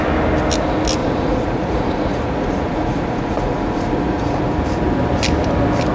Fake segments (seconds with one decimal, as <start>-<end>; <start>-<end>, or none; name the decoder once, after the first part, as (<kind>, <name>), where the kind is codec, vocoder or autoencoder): 1.0-4.5 (vocoder, Vocos)